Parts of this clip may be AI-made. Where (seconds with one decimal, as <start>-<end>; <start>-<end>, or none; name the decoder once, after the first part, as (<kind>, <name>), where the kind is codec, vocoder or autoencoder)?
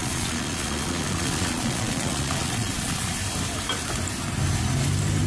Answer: 0.0-3.2 (vocoder, Vocos)